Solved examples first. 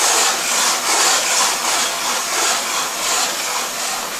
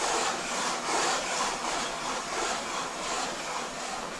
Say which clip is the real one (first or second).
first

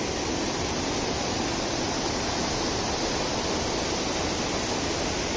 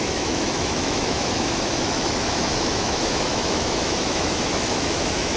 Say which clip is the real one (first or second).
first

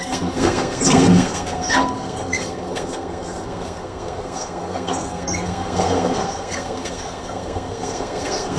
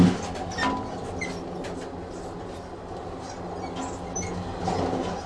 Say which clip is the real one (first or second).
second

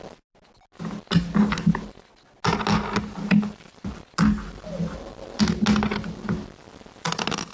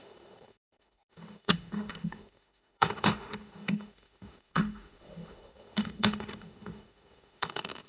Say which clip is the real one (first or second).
first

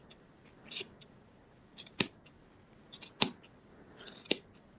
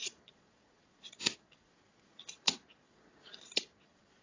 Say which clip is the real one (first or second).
first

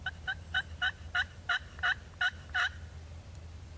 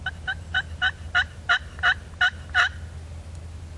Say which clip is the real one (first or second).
second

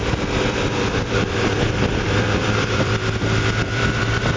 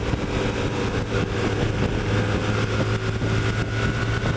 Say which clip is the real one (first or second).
second